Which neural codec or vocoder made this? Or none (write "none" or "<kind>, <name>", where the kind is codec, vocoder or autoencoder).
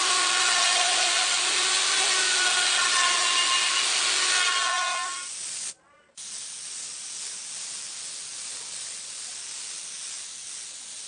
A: none